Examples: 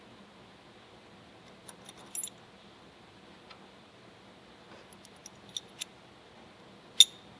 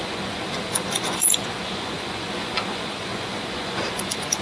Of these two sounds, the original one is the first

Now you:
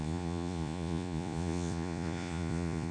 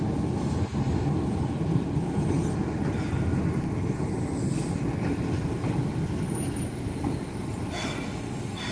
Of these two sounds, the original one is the second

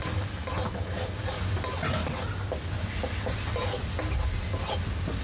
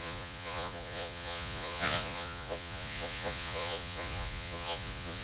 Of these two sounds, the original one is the first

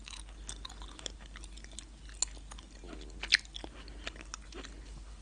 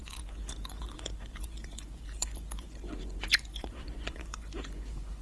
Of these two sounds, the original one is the first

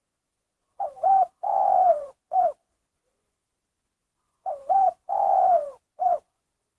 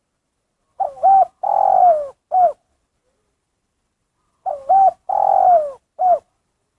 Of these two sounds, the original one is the second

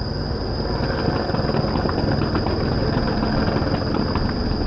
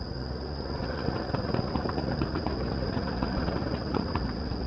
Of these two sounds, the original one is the first